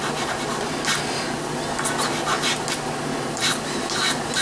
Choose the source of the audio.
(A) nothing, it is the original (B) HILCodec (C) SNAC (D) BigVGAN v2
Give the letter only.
A